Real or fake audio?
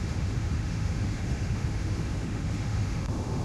fake